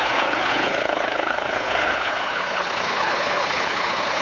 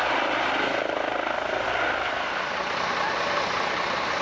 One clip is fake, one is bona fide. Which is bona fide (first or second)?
second